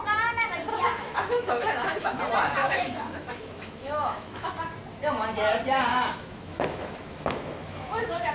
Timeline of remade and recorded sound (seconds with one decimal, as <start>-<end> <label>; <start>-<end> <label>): 0.0-0.7 recorded; 0.7-2.2 remade; 2.2-2.6 recorded; 2.6-4.5 remade; 4.5-5.9 recorded; 5.9-8.3 remade